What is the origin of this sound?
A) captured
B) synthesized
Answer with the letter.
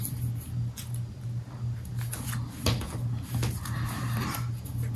A